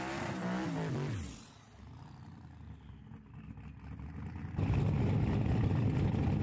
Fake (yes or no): no